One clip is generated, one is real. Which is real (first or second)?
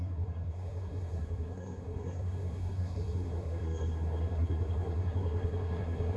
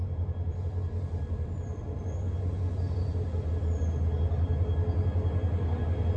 second